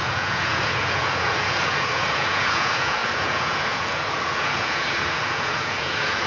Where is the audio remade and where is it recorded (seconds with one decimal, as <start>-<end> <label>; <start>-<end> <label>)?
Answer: 0.0-6.3 remade